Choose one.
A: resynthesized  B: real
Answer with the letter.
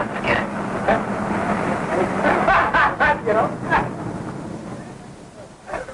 B